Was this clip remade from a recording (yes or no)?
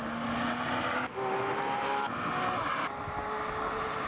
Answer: no